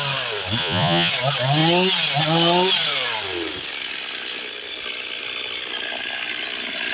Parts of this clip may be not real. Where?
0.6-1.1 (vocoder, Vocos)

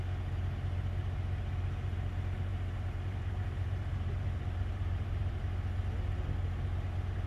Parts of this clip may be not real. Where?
2.5-5.4 (vocoder, BigVGAN v2)

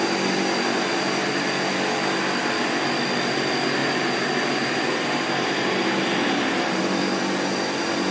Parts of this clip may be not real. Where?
3.8-6.8 (vocoder, BigVGAN v2)